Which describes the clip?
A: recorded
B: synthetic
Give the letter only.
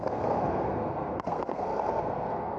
B